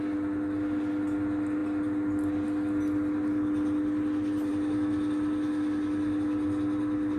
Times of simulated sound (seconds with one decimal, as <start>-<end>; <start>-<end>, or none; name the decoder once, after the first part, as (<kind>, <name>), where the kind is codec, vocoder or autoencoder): none